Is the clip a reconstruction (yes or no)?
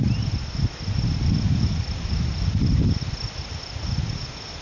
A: no